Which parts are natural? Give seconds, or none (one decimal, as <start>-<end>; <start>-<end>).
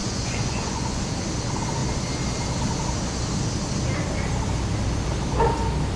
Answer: 1.0-6.0